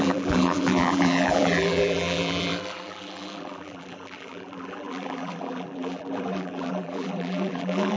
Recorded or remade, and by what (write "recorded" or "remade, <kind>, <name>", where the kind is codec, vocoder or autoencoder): remade, vocoder, BigVGAN v2